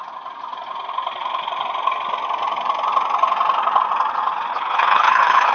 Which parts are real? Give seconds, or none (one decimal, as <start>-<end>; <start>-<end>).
0.0-4.5